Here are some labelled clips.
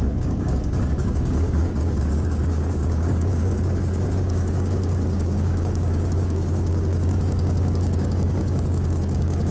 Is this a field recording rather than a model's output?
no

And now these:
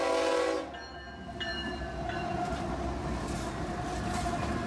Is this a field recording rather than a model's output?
yes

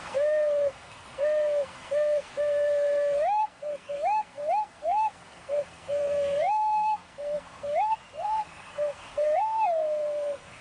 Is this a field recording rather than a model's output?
no